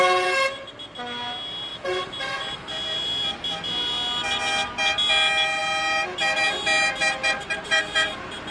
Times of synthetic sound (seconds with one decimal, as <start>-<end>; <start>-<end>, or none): 1.7-2.7; 7.2-7.8